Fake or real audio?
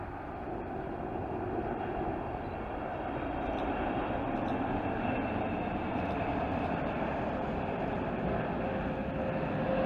real